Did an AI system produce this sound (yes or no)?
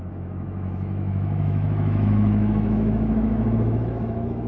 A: yes